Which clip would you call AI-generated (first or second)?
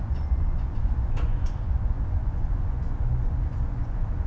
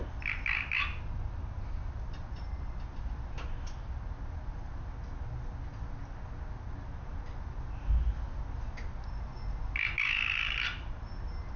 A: first